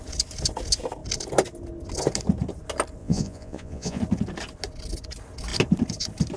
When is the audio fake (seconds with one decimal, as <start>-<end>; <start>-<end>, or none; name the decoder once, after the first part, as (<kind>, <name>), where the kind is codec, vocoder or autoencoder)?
3.0-4.0 (vocoder, Vocos)